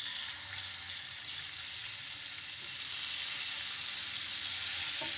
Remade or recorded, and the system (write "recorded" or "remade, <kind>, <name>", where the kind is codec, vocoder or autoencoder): recorded